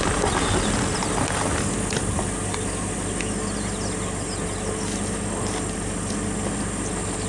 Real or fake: real